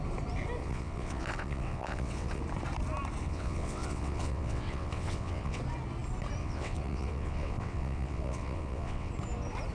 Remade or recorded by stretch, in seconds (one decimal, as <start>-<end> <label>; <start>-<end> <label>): 0.0-0.6 recorded; 0.6-2.4 remade; 2.4-3.2 recorded; 3.2-5.6 remade; 5.6-6.4 recorded; 6.4-9.1 remade; 9.1-9.7 recorded